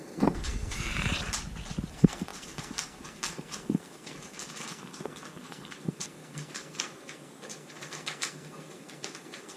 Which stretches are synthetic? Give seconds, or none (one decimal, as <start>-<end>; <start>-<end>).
0.0-0.9; 1.9-9.6